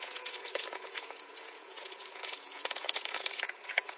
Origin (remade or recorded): remade